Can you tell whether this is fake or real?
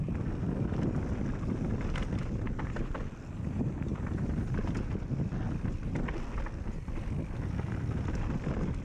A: real